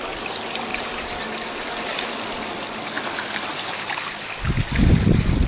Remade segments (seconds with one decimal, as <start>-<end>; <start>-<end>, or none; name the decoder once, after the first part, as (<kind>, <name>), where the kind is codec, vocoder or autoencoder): 0.7-1.2 (vocoder, BigVGAN v2)